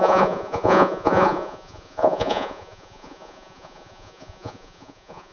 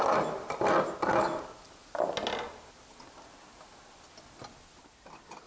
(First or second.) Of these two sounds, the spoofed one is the first